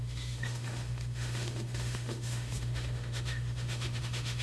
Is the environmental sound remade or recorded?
remade